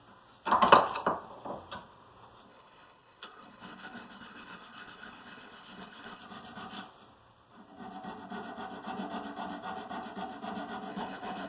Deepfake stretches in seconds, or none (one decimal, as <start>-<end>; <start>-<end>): 2.5-6.2; 10.9-11.5

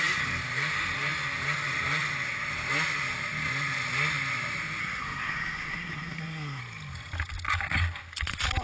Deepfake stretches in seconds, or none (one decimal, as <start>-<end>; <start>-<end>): 4.8-6.6

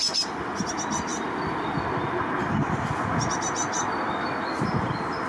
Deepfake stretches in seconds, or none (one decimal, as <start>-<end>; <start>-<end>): none

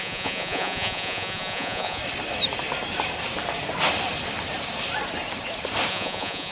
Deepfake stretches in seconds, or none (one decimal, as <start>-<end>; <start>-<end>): 0.0-2.0; 5.9-6.5

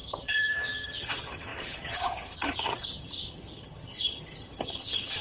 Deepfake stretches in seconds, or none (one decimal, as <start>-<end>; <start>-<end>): 0.0-5.2

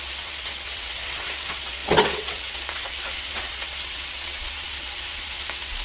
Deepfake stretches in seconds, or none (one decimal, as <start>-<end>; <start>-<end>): 0.0-5.8